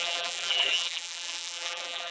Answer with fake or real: fake